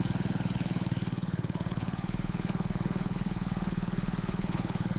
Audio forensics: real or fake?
fake